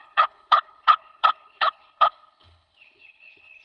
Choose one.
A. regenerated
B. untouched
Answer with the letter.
A